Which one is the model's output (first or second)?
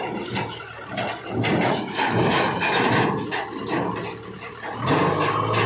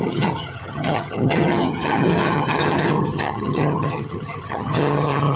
second